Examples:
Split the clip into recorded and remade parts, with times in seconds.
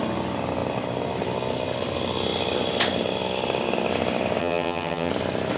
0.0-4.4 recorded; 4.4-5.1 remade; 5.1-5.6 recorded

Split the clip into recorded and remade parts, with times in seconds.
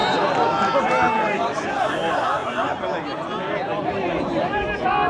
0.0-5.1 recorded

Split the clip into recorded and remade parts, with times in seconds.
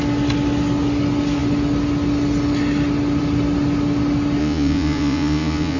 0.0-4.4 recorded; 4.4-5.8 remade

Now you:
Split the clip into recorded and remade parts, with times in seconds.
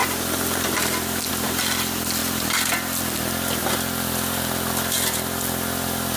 0.0-6.2 recorded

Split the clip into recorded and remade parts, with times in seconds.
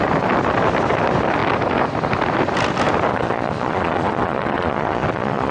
0.0-3.1 recorded; 3.1-5.5 remade